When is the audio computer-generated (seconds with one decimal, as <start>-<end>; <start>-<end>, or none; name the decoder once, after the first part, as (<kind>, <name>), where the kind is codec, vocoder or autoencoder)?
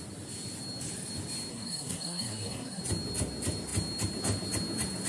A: 1.5-2.8 (codec, SNAC)